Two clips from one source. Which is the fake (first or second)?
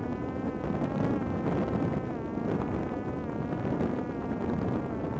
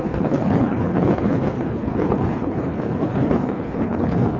second